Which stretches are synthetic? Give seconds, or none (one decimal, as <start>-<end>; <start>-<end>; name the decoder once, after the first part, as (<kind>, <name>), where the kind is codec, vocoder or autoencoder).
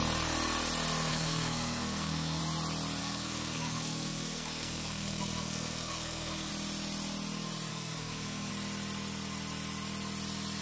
1.1-2.4 (codec, SNAC); 3.0-6.5; 7.7-8.5